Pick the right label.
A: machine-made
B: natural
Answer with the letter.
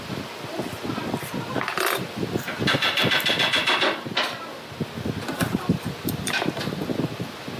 B